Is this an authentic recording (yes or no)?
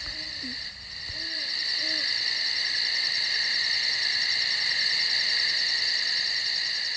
yes